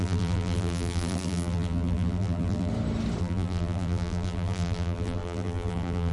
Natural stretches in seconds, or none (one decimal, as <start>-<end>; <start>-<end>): 2.7-3.2